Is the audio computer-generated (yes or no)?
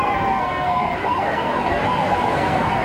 yes